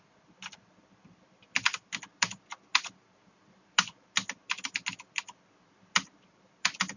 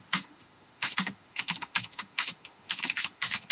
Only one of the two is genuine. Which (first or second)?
first